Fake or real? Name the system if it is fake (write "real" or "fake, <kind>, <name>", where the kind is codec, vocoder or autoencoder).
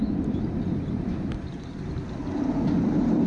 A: fake, vocoder, BigVGAN v2